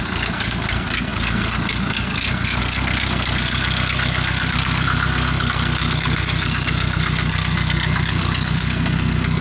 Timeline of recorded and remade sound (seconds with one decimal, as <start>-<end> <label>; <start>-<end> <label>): 0.0-9.4 remade